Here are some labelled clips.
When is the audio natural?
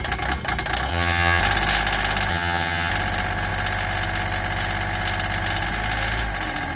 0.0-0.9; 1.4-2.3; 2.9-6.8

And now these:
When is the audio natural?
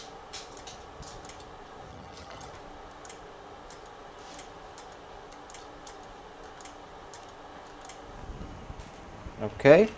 0.0-1.9; 2.5-10.0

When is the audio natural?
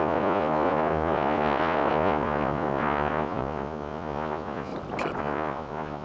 4.7-5.2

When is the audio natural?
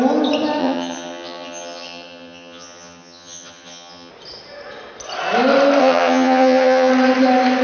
0.0-0.6; 4.1-5.8; 6.9-7.6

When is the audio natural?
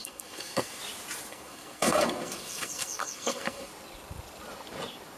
0.8-1.3; 3.7-5.2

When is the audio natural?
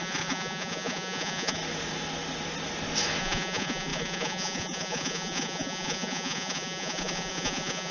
1.6-3.2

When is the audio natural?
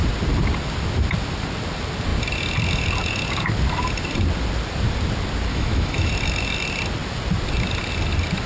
0.0-5.5; 6.1-8.5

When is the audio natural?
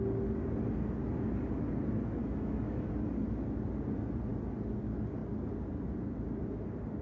0.0-2.2; 2.9-7.0